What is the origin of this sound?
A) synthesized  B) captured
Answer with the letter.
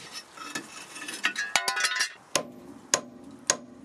B